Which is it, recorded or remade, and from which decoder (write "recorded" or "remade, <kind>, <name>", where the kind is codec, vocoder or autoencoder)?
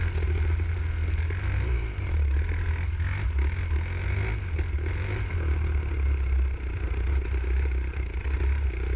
recorded